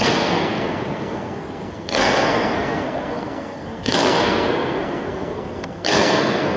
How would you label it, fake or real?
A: fake